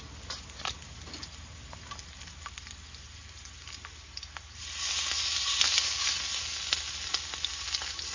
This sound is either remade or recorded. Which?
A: recorded